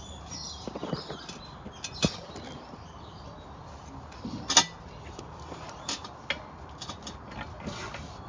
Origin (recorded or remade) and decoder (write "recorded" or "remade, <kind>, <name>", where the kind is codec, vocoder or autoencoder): recorded